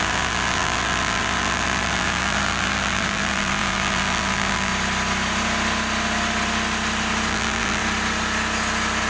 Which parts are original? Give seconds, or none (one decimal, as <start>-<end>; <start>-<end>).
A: 4.7-7.3; 7.8-9.1